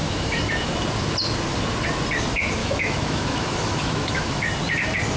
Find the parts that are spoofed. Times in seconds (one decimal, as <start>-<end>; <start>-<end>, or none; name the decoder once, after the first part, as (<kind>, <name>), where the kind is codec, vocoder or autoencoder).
0.0-0.7 (autoencoder, DAC-VAE); 2.6-4.4